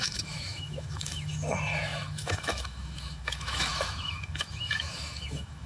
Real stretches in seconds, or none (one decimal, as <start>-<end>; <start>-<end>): none